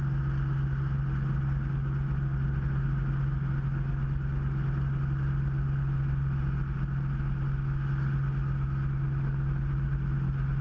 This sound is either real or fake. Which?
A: real